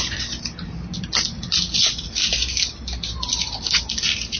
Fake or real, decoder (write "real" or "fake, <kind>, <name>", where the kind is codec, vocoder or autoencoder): real